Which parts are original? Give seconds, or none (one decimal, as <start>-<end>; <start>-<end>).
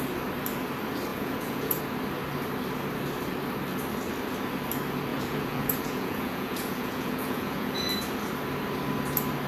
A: 0.0-1.1; 1.8-5.1; 7.9-9.5